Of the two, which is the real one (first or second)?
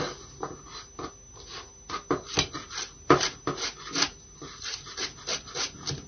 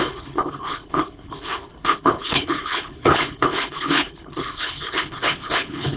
first